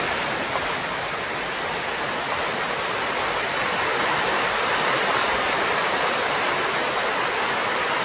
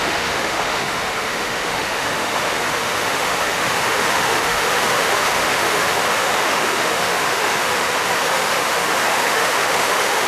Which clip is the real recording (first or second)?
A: first